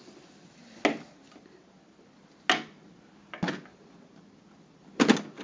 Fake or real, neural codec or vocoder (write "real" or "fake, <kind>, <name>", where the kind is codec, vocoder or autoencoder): real